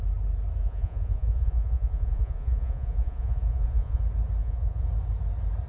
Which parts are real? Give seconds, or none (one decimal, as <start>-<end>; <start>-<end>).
0.0-0.6; 4.0-4.4; 4.9-5.7